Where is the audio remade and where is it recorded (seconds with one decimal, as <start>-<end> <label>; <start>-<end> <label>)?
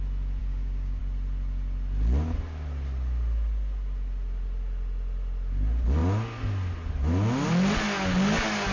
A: 0.0-0.4 recorded; 0.4-1.0 remade; 1.0-8.7 recorded